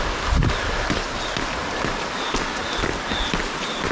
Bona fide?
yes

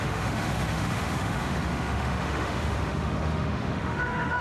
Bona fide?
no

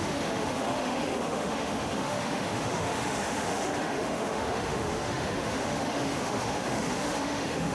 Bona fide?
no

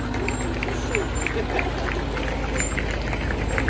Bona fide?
yes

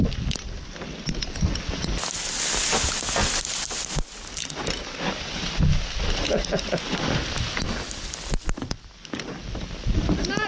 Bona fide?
yes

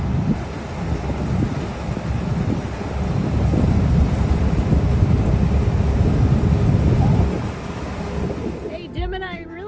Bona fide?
yes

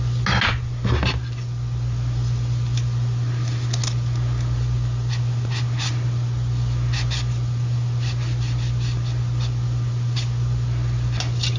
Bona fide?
yes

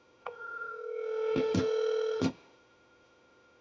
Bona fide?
no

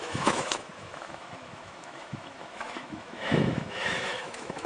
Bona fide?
no